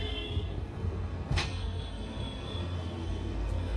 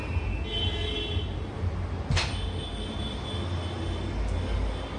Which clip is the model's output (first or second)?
first